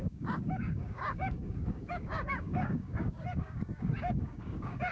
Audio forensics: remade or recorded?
remade